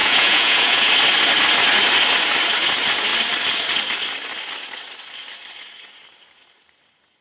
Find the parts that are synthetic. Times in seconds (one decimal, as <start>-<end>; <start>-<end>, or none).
0.0-0.9